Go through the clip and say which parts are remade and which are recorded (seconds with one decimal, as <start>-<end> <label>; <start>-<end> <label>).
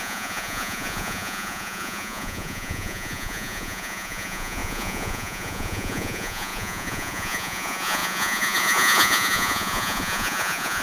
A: 0.0-10.8 remade